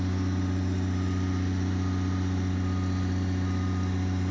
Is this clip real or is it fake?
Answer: real